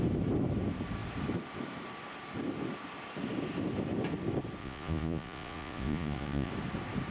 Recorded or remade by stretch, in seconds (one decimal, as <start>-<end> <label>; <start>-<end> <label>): 0.0-4.6 recorded; 4.6-6.5 remade; 6.5-7.1 recorded